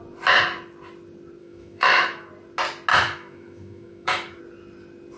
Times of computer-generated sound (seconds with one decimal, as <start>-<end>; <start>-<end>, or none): 1.4-2.3; 2.9-4.4